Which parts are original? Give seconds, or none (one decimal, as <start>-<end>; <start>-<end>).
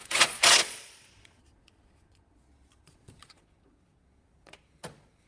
none